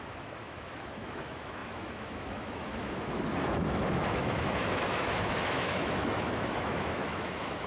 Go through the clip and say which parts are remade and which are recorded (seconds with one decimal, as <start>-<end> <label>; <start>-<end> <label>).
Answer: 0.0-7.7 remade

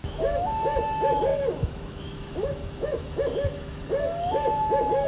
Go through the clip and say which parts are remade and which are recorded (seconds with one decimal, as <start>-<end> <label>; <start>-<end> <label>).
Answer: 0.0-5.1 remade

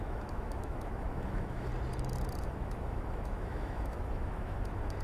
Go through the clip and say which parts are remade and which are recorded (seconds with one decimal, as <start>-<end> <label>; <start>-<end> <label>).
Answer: 0.0-1.7 remade; 1.7-2.4 recorded; 2.4-5.0 remade